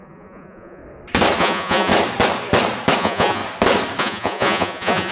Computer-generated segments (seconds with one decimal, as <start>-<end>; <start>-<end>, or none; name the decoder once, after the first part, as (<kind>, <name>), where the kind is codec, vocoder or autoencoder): 0.0-0.8 (vocoder, Vocos); 1.4-1.9; 3.0-3.4; 4.0-5.1

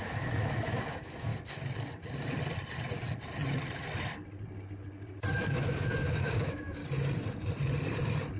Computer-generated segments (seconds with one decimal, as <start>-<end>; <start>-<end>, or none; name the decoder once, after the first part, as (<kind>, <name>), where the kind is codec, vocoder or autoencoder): 0.0-1.3 (autoencoder, DAC-VAE); 5.3-6.8

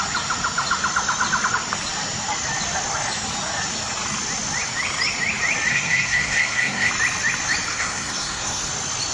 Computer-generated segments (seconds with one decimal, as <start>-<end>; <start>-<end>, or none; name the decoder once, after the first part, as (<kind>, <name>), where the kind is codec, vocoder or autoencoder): 5.7-6.9 (codec, SNAC); 7.7-8.7

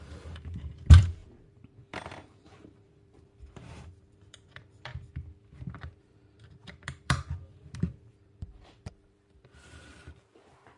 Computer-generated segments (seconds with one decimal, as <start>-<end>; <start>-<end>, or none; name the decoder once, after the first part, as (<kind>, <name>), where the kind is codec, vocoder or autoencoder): 0.0-4.9 (vocoder, BigVGAN v2); 6.0-10.8

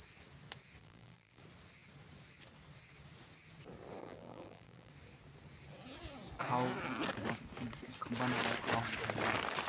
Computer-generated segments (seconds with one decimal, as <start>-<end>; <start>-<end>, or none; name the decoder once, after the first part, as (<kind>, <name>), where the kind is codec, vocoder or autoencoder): 0.8-1.4 (vocoder, BigVGAN v2); 4.0-4.9

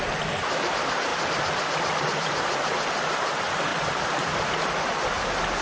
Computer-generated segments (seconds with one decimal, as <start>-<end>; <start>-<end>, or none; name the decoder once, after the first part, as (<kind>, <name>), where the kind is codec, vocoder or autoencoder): none

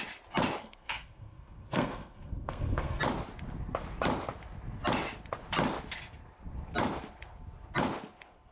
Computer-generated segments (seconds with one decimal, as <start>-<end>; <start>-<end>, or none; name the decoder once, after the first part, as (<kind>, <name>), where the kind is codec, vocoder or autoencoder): 0.6-3.0 (codec, SNAC)